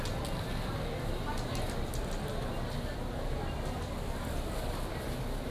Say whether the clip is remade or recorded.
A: recorded